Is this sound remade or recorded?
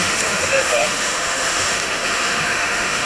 remade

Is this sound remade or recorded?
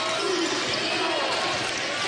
recorded